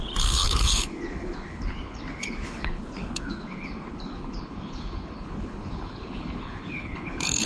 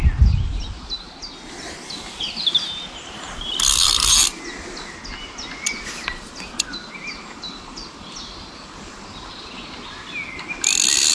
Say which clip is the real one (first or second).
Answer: second